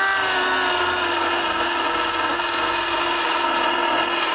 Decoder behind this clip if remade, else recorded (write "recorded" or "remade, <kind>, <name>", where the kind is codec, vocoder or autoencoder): recorded